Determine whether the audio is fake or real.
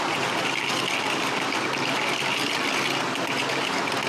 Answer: real